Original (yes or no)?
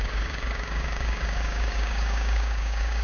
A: no